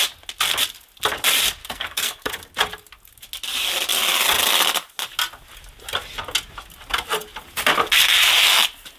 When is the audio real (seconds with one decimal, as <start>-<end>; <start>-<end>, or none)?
0.0-1.6; 2.3-9.0